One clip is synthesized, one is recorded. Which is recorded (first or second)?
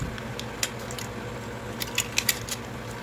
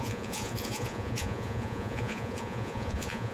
first